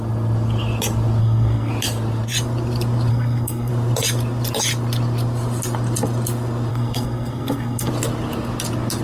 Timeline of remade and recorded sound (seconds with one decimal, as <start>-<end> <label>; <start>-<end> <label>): 0.0-1.2 recorded; 1.2-1.7 remade; 1.7-3.1 recorded; 3.1-3.7 remade; 3.7-6.7 recorded; 6.7-7.9 remade; 7.9-9.0 recorded